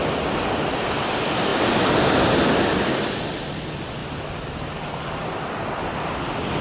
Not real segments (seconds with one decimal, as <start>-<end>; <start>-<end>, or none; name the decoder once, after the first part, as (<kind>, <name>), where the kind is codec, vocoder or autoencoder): none